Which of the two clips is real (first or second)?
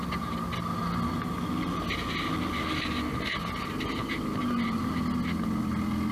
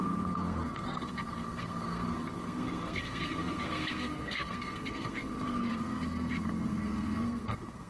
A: first